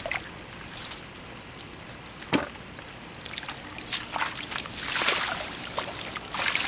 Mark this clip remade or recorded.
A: recorded